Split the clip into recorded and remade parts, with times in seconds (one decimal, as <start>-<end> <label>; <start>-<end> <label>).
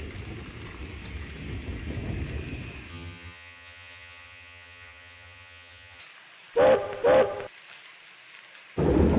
0.0-2.9 recorded; 2.9-6.0 remade; 6.0-9.2 recorded